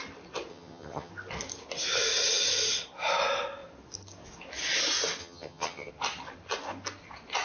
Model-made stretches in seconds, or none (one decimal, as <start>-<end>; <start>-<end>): 0.5-1.1; 5.2-5.9